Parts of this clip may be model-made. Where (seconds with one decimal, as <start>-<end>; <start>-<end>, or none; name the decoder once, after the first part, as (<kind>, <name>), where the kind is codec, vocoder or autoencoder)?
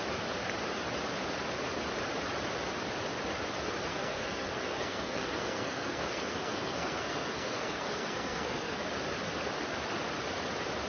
3.9-8.9 (codec, SNAC)